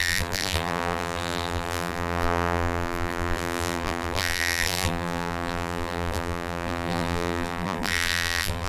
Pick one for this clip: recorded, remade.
remade